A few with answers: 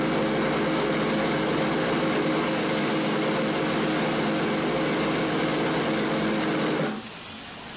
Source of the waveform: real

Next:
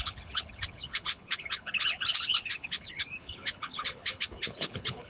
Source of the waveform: fake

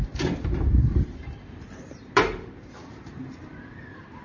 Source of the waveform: fake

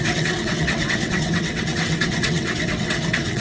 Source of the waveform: fake